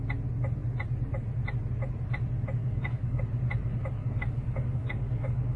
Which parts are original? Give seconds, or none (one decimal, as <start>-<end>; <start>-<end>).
0.0-2.6; 3.2-4.0